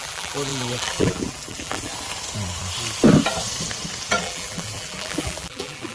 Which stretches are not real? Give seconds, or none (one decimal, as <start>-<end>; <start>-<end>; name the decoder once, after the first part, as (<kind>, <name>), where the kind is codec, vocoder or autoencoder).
0.0-1.9 (vocoder, BigVGAN v2); 4.2-5.9